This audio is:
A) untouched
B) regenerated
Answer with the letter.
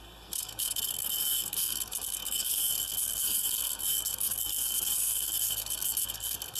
B